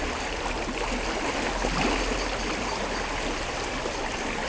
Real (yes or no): yes